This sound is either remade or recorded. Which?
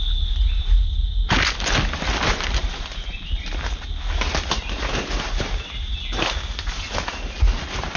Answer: recorded